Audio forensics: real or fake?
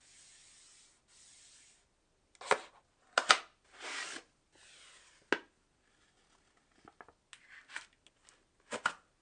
real